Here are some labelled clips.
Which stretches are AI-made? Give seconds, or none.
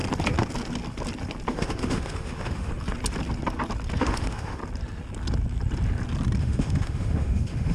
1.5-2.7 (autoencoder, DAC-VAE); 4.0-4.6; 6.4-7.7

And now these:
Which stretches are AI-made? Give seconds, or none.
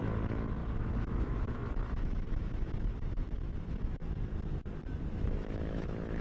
0.0-4.0 (autoencoder, DAC-VAE); 5.1-6.2